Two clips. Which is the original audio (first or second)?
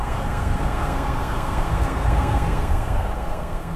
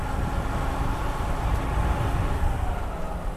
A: second